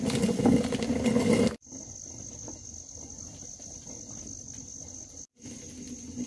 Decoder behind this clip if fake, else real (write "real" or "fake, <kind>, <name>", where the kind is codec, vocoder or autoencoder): real